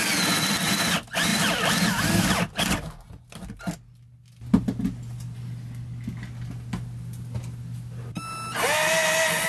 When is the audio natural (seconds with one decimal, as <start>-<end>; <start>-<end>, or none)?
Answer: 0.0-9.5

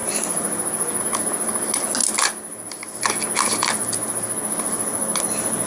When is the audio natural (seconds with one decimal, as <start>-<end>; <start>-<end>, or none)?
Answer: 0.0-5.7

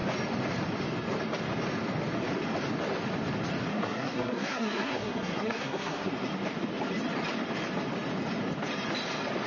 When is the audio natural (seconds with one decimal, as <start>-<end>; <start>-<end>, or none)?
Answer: 0.0-3.7; 6.1-9.5